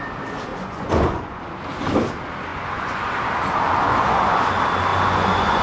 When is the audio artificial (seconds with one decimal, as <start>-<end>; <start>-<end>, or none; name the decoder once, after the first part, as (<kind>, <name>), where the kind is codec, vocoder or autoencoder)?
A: 0.5-1.4 (vocoder, Vocos); 2.5-3.1; 3.8-4.4; 4.9-5.6